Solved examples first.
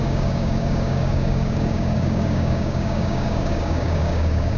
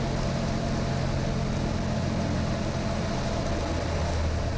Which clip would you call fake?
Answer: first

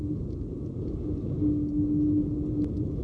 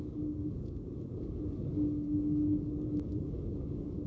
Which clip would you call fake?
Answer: second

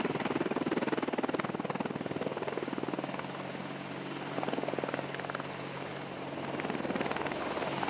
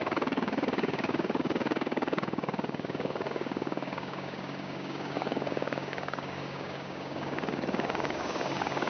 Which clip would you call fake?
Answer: second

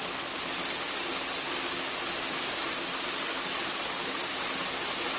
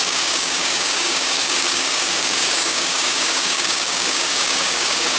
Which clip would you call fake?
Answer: second